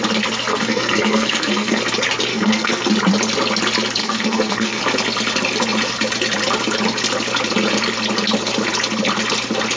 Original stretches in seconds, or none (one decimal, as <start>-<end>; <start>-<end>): 0.0-0.5; 1.8-2.3; 2.9-4.0; 4.8-9.8